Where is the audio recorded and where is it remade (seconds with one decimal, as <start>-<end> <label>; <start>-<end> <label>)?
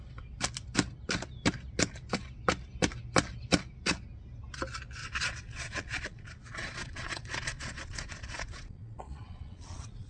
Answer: 0.0-5.0 recorded; 5.0-10.1 remade